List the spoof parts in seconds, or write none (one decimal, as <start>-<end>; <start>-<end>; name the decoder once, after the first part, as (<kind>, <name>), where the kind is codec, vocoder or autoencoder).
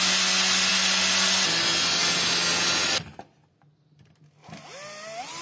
none